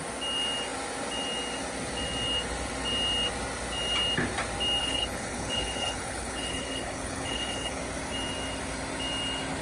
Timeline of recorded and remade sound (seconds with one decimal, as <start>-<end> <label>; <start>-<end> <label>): 0.0-4.8 recorded; 4.8-7.8 remade; 7.8-9.6 recorded